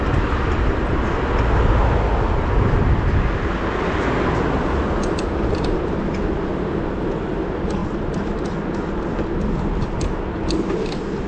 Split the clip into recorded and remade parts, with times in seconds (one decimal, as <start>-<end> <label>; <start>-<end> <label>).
0.0-11.3 recorded